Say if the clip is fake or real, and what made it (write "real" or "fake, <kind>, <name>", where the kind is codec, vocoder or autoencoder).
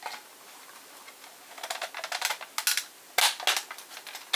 real